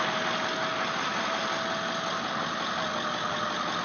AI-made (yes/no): no